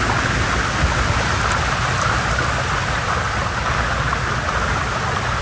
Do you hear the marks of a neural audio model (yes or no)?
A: no